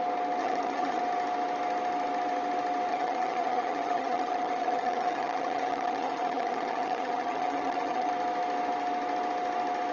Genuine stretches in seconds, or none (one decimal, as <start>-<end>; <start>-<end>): 0.0-0.4; 1.0-2.9; 8.1-9.9